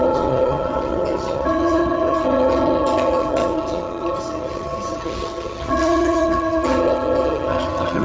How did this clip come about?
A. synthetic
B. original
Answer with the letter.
A